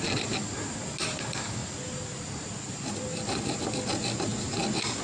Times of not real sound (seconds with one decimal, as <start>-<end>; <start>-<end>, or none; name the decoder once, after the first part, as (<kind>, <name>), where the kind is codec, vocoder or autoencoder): none